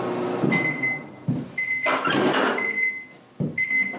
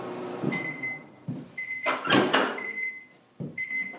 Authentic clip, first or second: first